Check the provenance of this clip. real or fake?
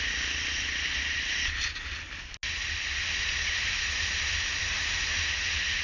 real